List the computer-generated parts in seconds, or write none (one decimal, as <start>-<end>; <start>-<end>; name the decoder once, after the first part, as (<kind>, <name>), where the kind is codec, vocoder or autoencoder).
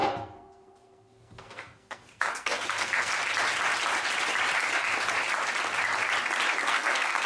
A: 0.0-3.1 (codec, SNAC); 6.6-7.3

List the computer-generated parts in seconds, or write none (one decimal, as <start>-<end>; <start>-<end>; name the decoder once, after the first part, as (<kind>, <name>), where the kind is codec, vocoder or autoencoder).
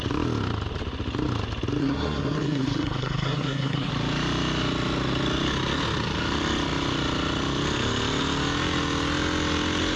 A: 1.8-3.9 (codec, SNAC)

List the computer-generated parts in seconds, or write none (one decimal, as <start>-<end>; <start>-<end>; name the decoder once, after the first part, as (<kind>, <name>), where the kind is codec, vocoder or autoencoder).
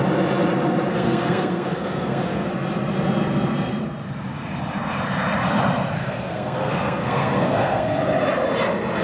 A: 0.9-2.5 (codec, SNAC); 6.0-8.0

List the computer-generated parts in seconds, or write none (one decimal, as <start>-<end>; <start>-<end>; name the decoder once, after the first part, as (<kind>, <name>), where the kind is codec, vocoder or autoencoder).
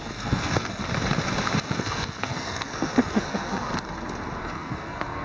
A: 0.0-0.8 (codec, SNAC); 1.7-3.7; 4.4-5.2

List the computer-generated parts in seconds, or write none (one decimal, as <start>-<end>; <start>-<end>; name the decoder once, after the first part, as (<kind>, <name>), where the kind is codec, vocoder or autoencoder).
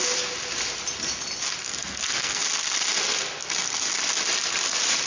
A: 1.6-2.4 (codec, SNAC)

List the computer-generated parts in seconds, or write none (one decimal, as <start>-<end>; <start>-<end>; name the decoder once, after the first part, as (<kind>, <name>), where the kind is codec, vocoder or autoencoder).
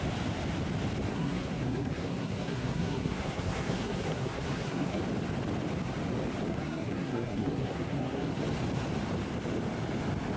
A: 1.1-5.0 (codec, SNAC); 6.5-8.4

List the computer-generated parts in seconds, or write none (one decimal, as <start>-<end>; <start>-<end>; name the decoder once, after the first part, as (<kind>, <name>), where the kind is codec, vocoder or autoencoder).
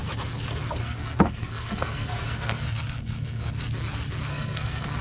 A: 0.8-3.5 (codec, SNAC); 4.3-5.0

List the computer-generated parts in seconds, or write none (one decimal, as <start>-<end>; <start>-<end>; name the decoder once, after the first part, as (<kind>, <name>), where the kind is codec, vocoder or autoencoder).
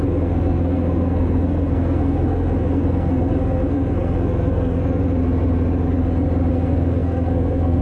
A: 0.0-5.0 (codec, SNAC); 6.5-7.8